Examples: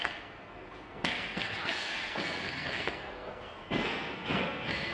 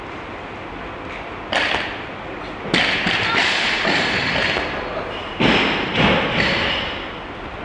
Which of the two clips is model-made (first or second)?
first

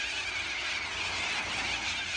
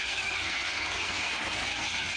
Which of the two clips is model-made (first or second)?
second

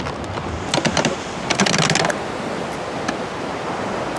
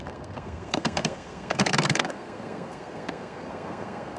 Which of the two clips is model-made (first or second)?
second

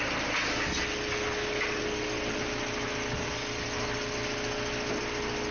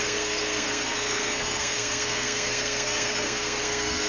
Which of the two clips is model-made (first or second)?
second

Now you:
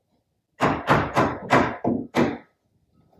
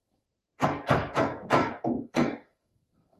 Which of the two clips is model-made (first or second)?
second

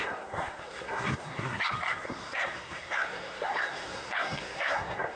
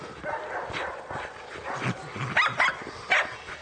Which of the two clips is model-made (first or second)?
first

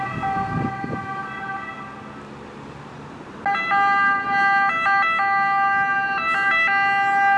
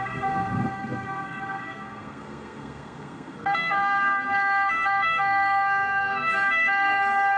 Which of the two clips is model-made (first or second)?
second